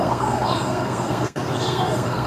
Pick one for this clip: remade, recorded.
remade